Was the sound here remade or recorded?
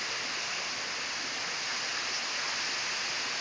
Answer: recorded